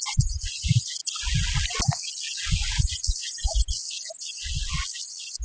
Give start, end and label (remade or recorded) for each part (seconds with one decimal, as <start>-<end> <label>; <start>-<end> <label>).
0.0-1.0 remade; 1.0-2.5 recorded; 2.5-3.8 remade; 3.8-4.9 recorded; 4.9-5.4 remade